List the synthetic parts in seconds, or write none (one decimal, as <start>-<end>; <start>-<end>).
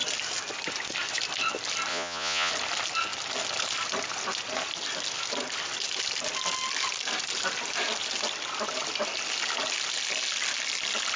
1.9-2.5